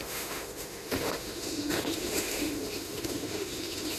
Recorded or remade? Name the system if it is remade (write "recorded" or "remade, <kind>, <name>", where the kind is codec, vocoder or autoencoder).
remade, autoencoder, DAC-VAE